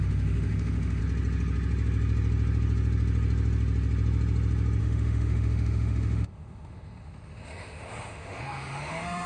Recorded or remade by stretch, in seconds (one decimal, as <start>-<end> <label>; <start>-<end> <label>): 0.0-1.0 remade; 1.0-4.8 recorded; 4.8-9.3 remade